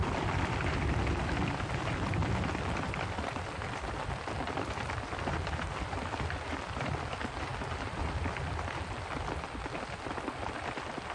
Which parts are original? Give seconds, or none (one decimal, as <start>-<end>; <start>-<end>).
0.0-11.1